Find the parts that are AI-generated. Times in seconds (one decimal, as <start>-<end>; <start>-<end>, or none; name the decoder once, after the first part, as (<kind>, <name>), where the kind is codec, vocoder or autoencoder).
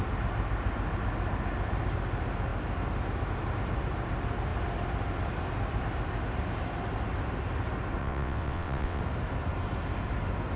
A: 8.0-9.0 (vocoder, WaveNeXt)